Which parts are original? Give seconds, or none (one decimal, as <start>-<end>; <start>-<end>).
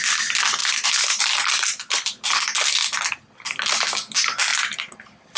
0.0-5.4